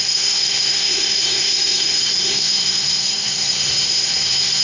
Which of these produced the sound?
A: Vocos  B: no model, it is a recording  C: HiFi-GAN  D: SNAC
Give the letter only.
D